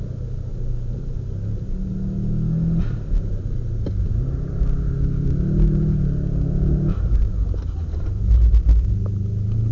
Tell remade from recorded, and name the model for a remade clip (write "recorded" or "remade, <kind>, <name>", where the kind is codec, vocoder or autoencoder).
recorded